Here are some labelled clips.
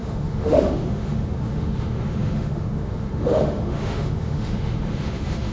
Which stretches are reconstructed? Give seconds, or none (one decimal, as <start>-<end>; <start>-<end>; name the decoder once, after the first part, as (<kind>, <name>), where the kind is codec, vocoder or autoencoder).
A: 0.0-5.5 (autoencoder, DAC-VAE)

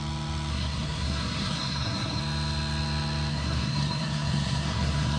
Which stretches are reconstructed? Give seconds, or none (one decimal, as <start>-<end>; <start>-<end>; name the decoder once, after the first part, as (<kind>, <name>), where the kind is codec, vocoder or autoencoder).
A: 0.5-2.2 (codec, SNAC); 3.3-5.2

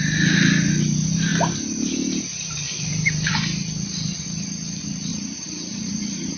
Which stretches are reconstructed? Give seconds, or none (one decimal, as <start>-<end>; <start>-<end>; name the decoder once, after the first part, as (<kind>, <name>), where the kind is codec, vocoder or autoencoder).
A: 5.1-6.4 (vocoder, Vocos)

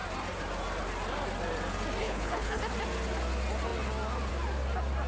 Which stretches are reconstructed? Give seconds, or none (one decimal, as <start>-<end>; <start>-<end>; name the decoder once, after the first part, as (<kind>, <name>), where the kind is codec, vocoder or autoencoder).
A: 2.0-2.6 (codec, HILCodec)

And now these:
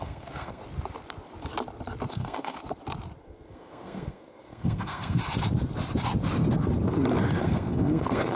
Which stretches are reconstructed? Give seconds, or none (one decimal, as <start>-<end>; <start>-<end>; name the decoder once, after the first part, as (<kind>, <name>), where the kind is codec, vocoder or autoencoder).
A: 0.0-0.6 (codec, SNAC); 2.1-2.6; 3.2-5.2; 7.4-8.4

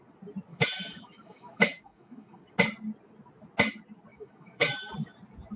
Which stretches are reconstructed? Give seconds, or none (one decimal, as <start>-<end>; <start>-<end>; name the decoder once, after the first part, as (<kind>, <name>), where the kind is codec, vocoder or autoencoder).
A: 0.5-2.4 (autoencoder, DAC-VAE); 4.1-4.9

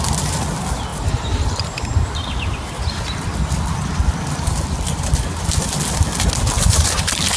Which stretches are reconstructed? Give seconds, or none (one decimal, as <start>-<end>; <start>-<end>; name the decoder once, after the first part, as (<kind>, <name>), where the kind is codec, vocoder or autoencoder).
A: none

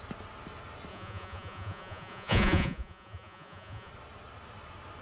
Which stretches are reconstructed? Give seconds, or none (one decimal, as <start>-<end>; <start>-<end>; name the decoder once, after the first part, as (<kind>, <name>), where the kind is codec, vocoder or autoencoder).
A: 0.9-3.9 (vocoder, Vocos)